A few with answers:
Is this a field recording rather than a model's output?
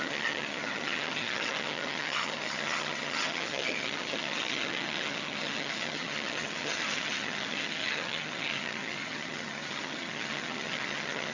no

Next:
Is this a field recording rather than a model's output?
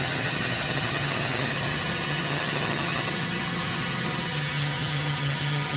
no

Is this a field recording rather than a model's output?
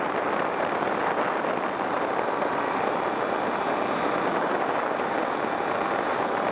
yes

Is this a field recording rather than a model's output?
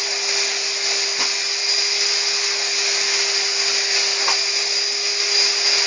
yes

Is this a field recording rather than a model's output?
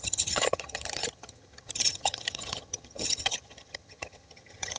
no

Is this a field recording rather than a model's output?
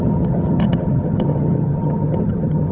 no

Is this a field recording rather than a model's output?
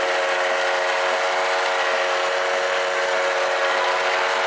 yes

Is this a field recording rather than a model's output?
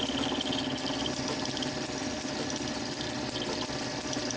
yes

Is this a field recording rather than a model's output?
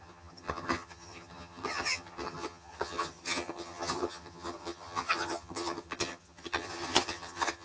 no